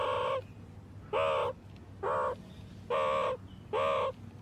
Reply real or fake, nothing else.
real